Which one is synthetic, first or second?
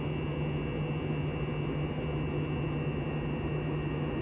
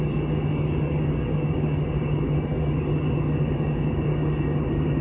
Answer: second